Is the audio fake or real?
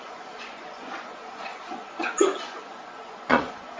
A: fake